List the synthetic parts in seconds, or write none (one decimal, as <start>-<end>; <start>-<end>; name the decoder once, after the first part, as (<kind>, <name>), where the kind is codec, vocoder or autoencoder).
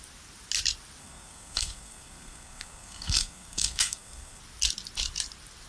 1.0-4.4 (codec, SNAC)